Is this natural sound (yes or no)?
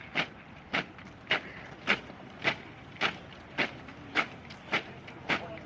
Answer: no